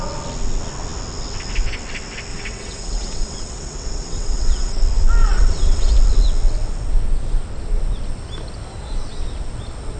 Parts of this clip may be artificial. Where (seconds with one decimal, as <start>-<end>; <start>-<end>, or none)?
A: 2.3-4.8; 5.2-5.9